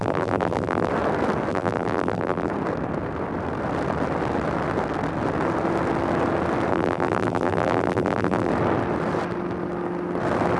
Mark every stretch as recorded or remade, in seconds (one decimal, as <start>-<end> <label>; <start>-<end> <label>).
0.0-0.9 remade; 0.9-1.5 recorded; 1.5-2.5 remade; 2.5-6.7 recorded; 6.7-8.5 remade; 8.5-10.6 recorded